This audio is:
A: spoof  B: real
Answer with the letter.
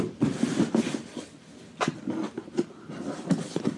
B